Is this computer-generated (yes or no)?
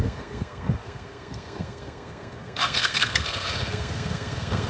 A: yes